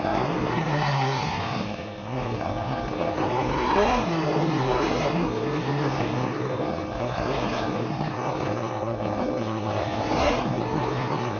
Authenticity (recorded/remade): remade